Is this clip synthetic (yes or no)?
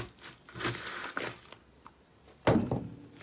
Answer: no